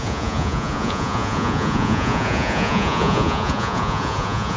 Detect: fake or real fake